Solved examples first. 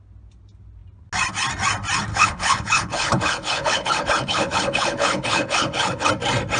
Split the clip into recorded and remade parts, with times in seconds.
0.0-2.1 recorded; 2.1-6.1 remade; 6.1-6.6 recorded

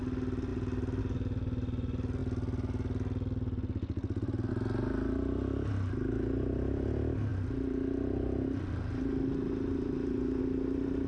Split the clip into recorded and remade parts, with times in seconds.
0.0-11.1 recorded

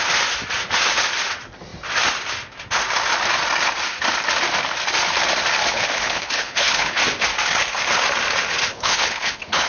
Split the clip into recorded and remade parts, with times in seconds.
0.0-5.7 recorded; 5.7-7.0 remade; 7.0-8.7 recorded; 8.7-9.7 remade